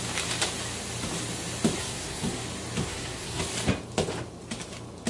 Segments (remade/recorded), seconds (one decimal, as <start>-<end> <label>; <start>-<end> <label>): 0.0-1.8 recorded; 1.8-2.4 remade; 2.4-2.8 recorded; 2.8-3.4 remade; 3.4-5.1 recorded